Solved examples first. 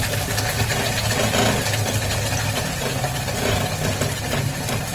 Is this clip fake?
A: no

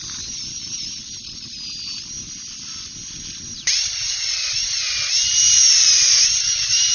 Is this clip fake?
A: no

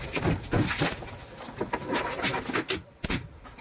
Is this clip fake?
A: no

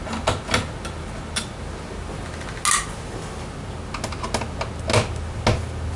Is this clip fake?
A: no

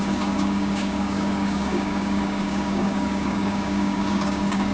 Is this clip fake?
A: yes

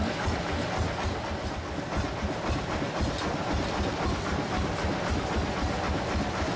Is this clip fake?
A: no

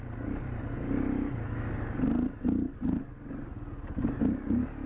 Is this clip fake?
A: no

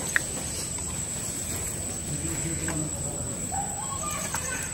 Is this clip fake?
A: yes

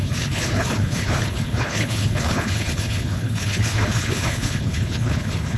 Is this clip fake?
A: yes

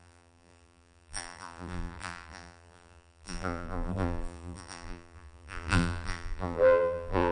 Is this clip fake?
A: yes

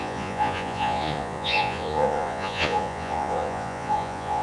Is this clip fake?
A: yes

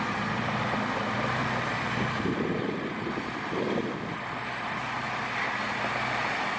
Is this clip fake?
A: no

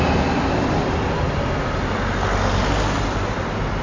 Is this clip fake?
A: no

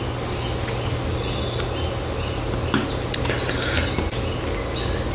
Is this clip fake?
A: no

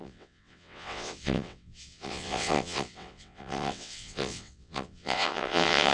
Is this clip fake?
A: yes